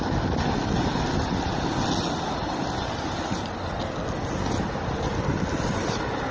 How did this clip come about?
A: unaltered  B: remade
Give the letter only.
A